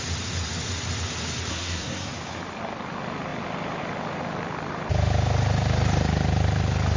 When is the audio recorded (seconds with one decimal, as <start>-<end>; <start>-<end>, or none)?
0.0-1.5; 2.1-7.0